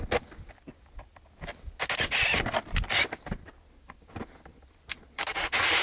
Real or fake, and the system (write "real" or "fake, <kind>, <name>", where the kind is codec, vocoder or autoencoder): real